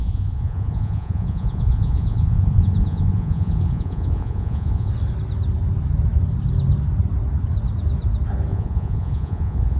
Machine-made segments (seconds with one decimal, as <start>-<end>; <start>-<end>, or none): 0.0-4.9; 8.5-9.8